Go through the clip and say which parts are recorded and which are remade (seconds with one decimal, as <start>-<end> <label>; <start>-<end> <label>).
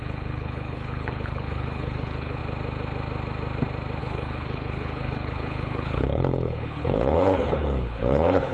0.0-2.4 remade; 2.4-4.0 recorded; 4.0-8.5 remade